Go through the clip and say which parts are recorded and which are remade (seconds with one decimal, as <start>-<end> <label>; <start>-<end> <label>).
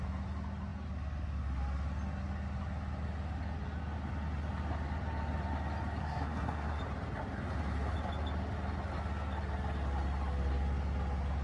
0.0-6.0 recorded; 6.0-6.8 remade; 6.8-11.4 recorded